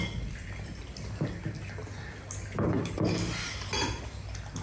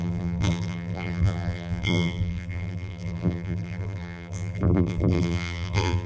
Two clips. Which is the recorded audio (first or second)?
first